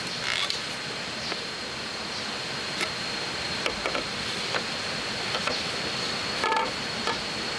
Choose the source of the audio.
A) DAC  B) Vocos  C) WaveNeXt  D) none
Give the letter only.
D